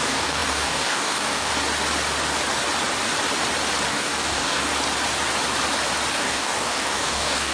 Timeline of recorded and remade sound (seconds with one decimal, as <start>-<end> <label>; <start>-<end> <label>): 0.0-1.5 remade; 1.5-3.9 recorded; 3.9-4.7 remade; 4.7-6.1 recorded; 6.1-7.5 remade